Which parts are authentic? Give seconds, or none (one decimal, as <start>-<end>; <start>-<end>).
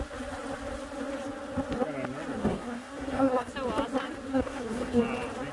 0.0-2.4; 3.5-4.3; 5.0-5.5